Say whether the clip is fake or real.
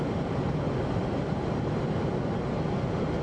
fake